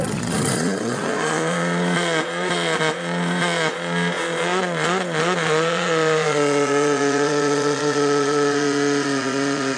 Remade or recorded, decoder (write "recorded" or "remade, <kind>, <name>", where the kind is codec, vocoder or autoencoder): remade, vocoder, Vocos